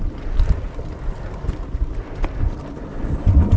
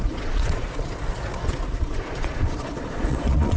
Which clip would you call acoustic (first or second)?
first